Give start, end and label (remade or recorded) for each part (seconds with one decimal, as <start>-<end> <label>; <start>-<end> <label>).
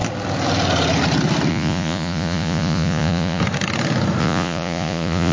0.0-1.5 recorded; 1.5-3.4 remade; 3.4-4.2 recorded; 4.2-5.3 remade